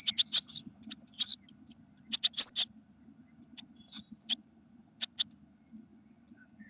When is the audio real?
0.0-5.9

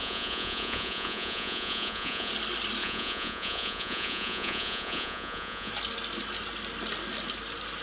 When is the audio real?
2.3-2.8; 5.7-7.8